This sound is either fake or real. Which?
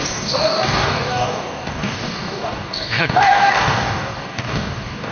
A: fake